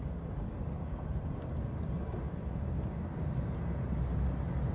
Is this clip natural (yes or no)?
yes